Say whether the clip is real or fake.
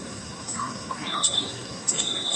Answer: fake